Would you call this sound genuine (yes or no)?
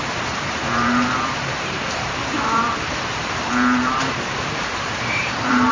no